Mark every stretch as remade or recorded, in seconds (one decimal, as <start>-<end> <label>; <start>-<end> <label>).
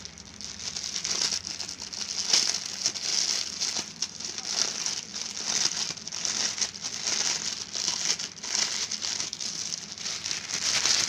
0.0-11.1 recorded